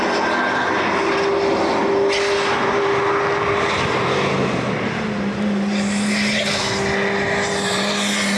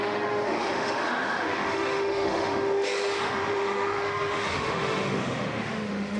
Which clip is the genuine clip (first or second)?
first